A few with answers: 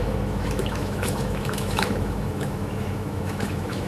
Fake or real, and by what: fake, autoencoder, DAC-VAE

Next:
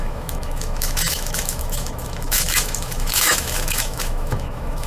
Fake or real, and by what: fake, autoencoder, DAC-VAE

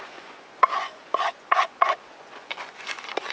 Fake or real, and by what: fake, vocoder, Vocos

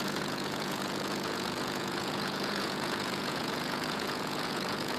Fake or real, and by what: fake, vocoder, Vocos